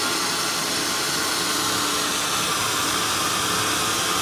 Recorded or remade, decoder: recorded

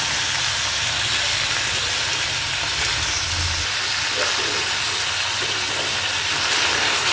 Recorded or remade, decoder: recorded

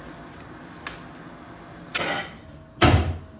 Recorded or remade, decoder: recorded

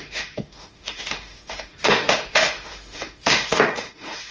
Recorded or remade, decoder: remade, autoencoder, DAC-VAE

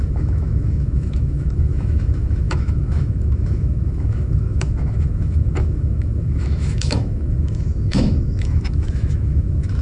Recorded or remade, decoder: remade, autoencoder, DAC-VAE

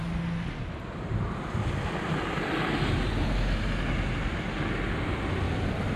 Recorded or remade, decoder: recorded